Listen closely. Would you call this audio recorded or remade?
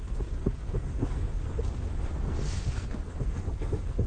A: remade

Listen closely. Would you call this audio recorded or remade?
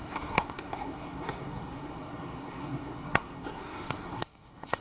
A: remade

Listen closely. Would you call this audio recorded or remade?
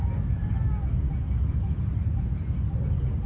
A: recorded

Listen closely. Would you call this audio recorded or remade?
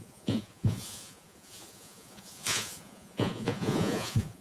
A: remade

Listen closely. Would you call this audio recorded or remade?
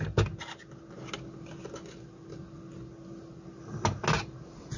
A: recorded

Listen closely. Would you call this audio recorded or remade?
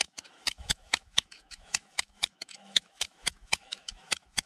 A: remade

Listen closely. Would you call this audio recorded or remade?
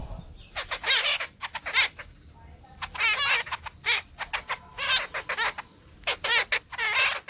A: recorded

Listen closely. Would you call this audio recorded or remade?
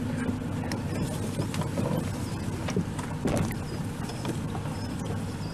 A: recorded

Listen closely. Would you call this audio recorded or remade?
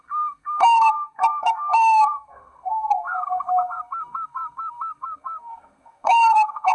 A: remade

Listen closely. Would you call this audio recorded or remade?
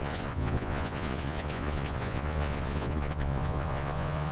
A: remade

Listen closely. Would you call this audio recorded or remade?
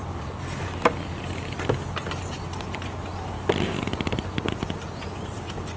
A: recorded